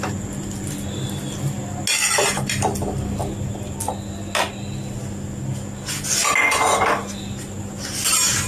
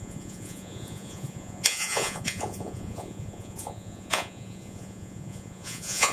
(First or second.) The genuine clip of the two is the first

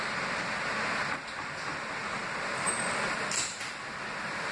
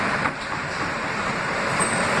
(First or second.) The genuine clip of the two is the first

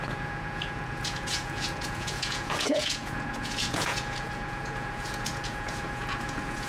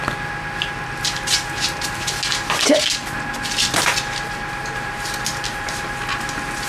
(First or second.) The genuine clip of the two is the second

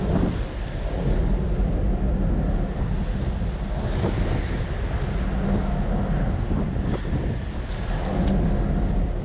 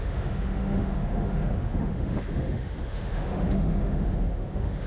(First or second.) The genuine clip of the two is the first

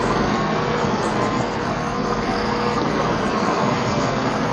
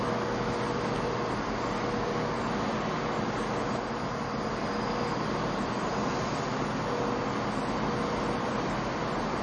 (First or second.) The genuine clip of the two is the second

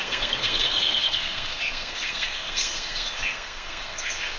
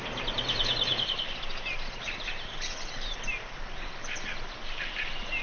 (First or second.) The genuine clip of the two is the second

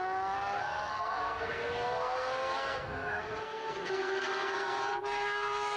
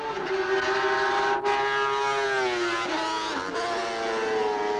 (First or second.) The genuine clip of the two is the second